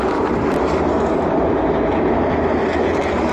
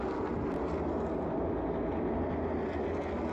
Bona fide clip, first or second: second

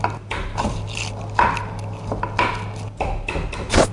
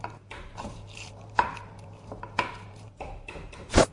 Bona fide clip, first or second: first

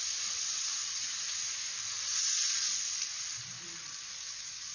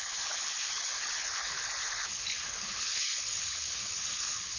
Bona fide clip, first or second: first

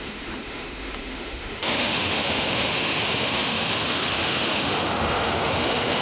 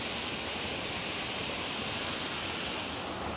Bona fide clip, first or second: second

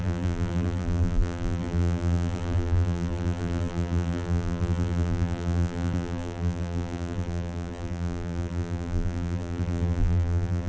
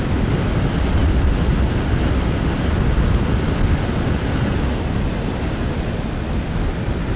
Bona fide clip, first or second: second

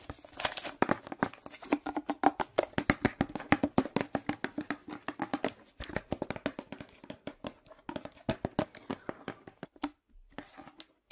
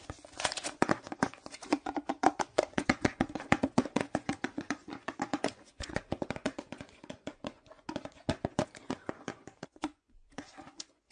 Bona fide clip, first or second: first